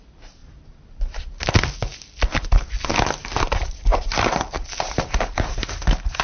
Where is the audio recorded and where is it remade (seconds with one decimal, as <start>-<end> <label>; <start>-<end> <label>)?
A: 0.0-0.4 recorded; 0.4-1.2 remade; 1.2-3.9 recorded; 3.9-6.2 remade